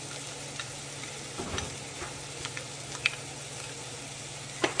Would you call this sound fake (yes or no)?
no